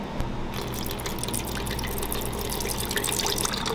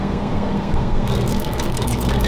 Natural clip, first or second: first